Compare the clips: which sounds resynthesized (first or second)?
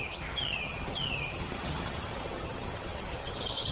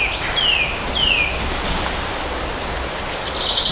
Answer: first